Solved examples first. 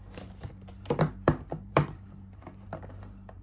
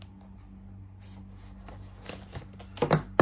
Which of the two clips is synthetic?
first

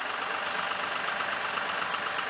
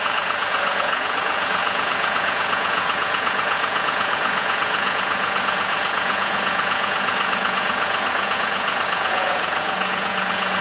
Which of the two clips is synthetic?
second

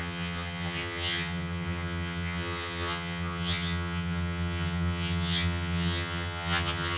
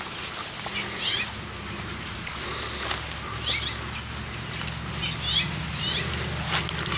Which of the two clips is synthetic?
first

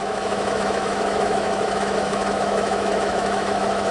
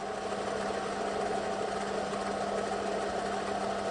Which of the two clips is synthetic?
first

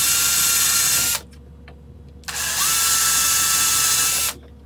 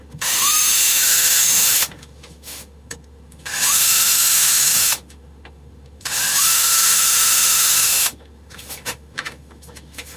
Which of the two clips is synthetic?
second